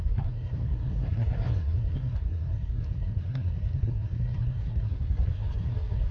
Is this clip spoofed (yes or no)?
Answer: yes